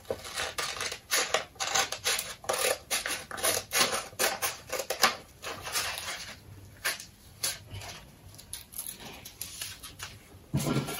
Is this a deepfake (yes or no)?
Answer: yes